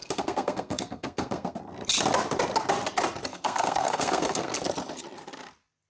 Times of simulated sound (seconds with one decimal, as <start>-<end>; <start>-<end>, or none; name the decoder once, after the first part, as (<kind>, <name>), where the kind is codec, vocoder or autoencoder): 0.0-1.6 (codec, SNAC); 3.3-4.5